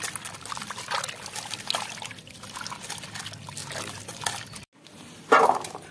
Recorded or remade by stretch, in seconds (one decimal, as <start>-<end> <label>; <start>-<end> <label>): 0.0-5.9 recorded